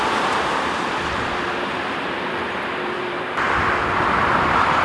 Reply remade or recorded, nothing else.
remade